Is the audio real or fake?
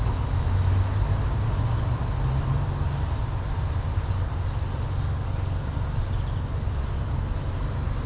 real